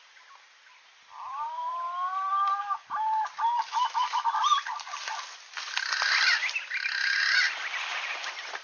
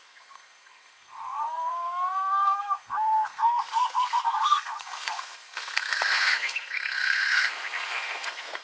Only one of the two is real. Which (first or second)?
first